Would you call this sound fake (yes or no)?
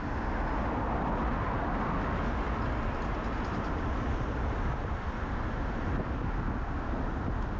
no